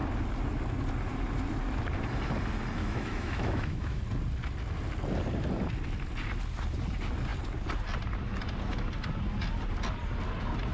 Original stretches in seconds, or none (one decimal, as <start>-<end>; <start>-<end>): 0.0-2.8; 4.0-10.7